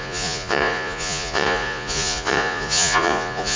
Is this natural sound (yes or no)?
no